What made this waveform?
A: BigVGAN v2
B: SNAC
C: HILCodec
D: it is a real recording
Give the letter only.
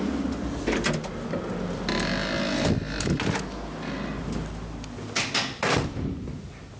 D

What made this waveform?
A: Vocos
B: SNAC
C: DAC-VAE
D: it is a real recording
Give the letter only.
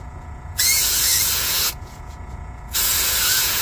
A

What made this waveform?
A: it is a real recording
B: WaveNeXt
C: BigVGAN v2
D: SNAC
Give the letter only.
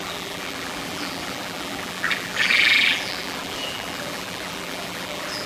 C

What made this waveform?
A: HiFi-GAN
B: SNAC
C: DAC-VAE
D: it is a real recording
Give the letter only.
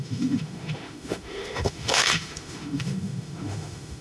C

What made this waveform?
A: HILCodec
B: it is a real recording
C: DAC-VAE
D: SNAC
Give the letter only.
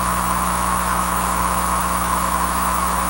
C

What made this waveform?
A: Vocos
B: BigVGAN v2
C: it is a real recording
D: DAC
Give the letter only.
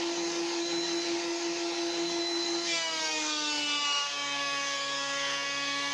D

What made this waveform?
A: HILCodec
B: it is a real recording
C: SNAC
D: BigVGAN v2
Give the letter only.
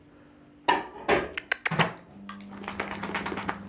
B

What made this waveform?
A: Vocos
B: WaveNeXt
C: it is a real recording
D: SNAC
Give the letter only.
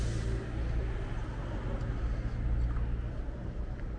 C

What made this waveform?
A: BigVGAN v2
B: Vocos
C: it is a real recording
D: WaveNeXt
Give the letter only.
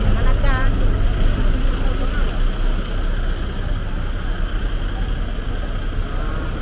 C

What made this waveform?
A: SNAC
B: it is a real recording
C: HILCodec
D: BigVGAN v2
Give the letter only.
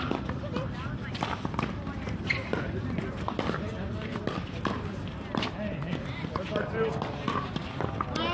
B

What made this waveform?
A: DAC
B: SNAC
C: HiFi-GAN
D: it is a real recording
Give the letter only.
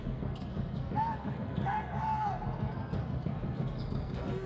B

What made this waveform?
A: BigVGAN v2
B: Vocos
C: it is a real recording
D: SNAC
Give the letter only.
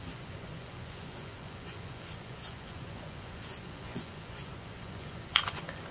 B